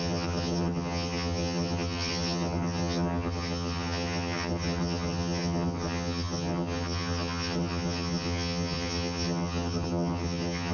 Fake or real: fake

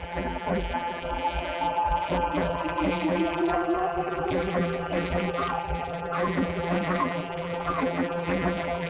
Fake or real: fake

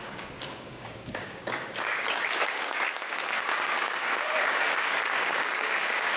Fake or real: fake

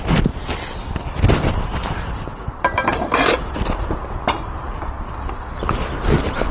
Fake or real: real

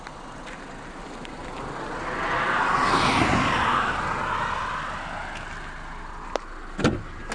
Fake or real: real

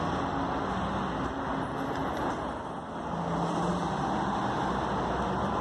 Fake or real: real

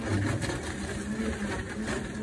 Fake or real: real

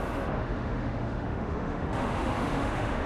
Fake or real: fake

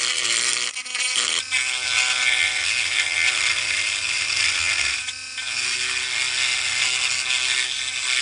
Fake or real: real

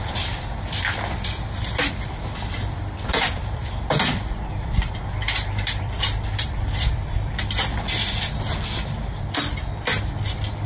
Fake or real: fake